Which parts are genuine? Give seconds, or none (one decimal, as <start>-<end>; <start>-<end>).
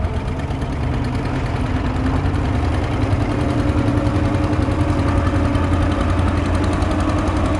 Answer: 0.0-7.6